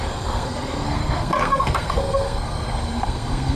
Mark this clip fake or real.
fake